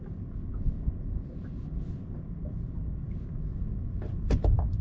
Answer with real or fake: real